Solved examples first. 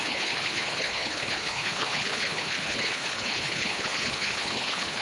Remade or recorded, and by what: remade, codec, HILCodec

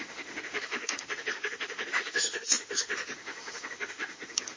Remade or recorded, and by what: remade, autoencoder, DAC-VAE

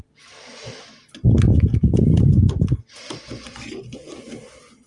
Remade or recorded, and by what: recorded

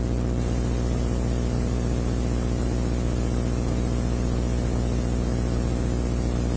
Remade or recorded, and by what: recorded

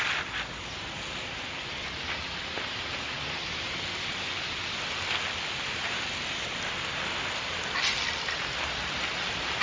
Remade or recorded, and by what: recorded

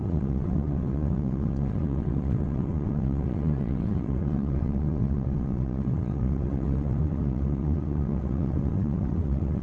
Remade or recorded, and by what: remade, vocoder, WaveNeXt